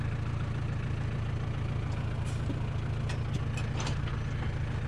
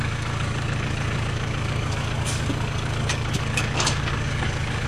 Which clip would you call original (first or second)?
first